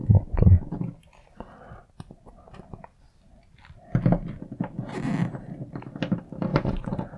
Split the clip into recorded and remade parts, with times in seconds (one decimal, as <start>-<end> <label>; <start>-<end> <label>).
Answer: 0.0-6.5 recorded; 6.5-7.2 remade

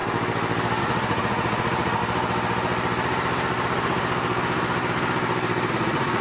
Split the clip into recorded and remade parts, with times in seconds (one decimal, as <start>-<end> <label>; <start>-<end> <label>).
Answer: 0.0-0.8 recorded; 0.8-2.0 remade; 2.0-5.7 recorded; 5.7-6.2 remade